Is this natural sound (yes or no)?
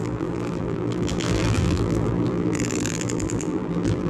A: no